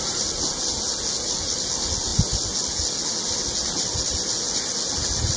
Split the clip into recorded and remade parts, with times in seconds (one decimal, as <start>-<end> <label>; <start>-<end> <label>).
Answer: 0.0-5.4 recorded